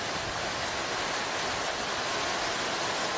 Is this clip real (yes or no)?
yes